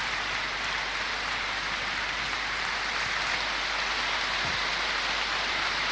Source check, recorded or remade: recorded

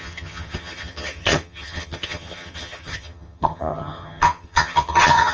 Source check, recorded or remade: remade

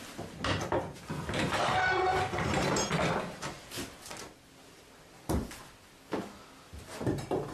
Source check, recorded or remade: recorded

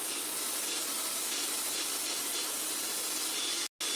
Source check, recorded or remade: recorded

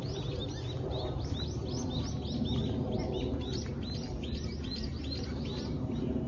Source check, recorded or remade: recorded